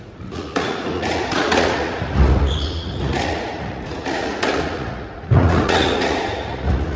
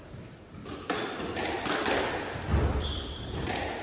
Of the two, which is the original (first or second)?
second